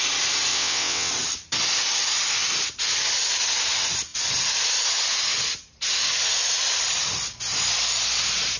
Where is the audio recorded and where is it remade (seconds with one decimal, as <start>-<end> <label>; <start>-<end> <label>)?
0.0-0.5 recorded; 0.5-1.1 remade; 1.1-8.6 recorded